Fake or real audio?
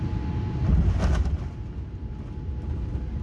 real